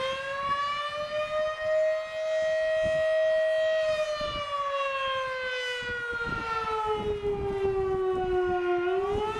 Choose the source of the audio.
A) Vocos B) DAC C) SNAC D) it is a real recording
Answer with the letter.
D